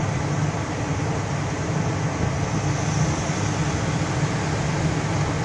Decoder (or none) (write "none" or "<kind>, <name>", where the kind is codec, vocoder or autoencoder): none